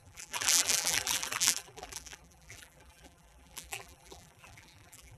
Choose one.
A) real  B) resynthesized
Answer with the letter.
B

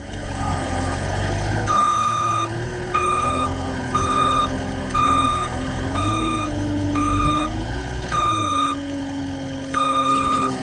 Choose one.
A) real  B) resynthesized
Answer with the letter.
B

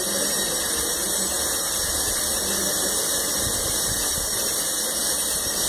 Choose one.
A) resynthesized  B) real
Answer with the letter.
B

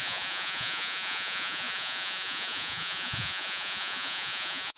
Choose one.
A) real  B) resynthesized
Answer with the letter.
B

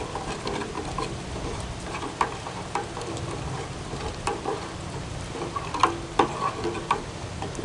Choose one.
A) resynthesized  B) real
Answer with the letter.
B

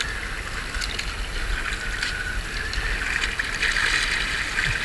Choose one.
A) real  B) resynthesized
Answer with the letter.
A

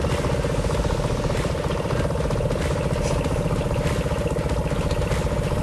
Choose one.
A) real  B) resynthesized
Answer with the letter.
A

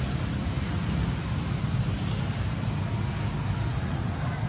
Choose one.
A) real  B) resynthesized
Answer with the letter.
A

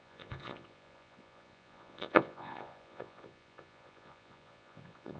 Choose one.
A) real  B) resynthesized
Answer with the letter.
B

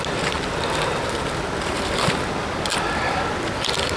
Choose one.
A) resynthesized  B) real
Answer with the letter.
B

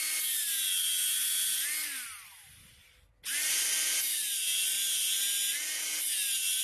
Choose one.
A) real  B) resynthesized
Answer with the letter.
A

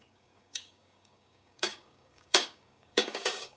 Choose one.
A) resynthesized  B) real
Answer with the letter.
A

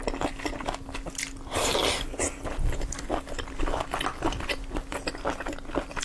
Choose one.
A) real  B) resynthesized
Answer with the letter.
A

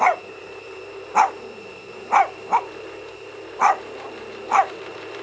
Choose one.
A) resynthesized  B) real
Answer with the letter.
A